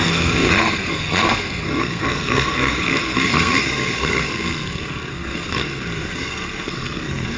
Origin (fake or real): fake